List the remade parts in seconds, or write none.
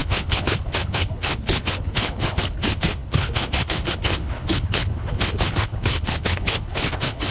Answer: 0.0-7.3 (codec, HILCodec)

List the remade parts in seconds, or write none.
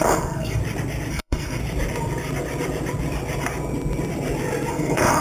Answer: 0.0-0.6 (codec, SNAC); 1.1-1.6; 4.7-5.2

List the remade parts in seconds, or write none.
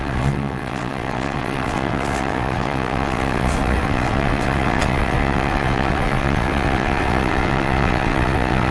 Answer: 0.0-8.7 (vocoder, WaveNeXt)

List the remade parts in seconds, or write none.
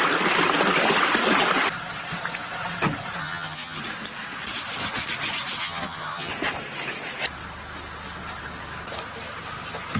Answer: 3.2-3.8 (vocoder, HiFi-GAN); 5.6-6.3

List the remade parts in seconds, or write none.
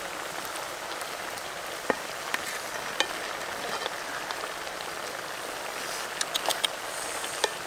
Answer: none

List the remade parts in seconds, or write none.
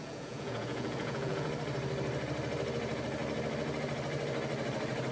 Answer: 0.0-1.5 (vocoder, Vocos)